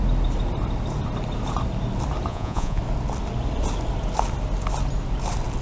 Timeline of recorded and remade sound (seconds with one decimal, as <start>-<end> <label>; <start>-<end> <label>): 0.0-2.3 recorded; 2.3-2.8 remade; 2.8-5.6 recorded